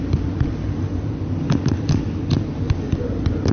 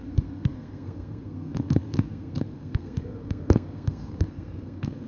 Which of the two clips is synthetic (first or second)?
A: second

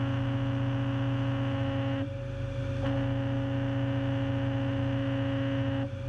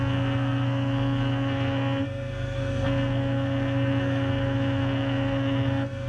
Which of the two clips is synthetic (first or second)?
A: second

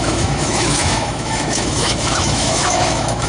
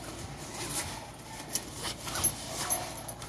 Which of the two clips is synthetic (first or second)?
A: first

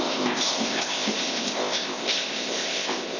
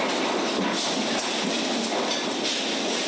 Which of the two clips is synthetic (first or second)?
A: first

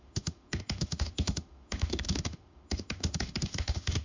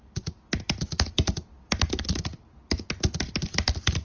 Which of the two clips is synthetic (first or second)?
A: first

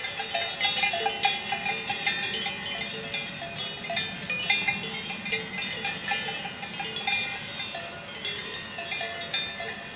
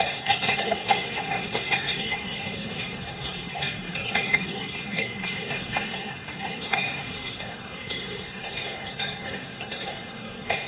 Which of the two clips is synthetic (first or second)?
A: second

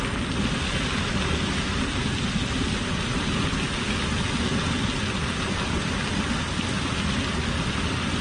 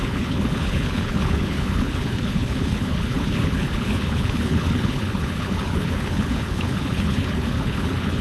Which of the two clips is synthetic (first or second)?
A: second